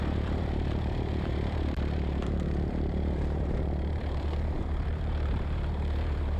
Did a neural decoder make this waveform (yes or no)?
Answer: yes